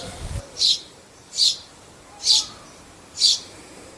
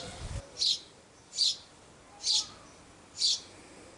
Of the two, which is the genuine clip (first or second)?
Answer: second